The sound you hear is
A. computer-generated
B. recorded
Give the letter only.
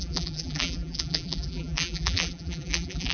A